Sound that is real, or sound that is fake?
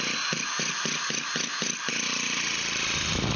real